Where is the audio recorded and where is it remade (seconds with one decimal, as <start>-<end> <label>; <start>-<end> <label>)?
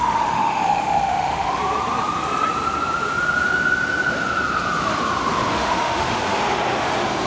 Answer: 0.0-1.6 remade; 1.6-5.5 recorded; 5.5-6.4 remade; 6.4-7.3 recorded